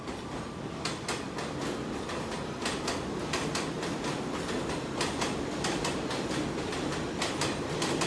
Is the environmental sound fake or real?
real